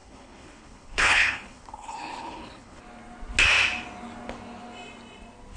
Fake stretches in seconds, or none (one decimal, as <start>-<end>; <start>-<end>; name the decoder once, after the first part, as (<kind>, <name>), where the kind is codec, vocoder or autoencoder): 0.0-2.8 (codec, HILCodec)